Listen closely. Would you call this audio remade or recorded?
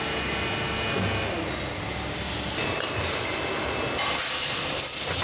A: recorded